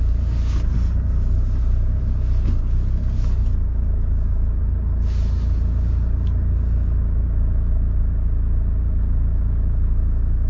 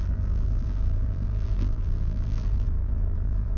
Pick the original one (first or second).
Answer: first